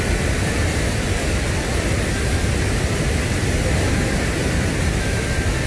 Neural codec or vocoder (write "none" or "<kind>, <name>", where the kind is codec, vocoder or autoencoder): none